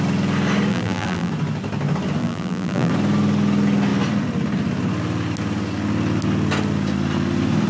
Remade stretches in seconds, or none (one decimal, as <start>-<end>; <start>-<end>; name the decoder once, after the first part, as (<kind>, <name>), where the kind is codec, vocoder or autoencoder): 0.7-1.3 (vocoder, BigVGAN v2); 2.2-2.9